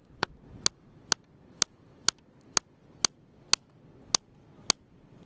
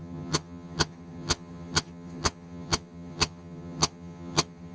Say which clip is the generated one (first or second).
second